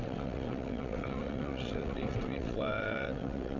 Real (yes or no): no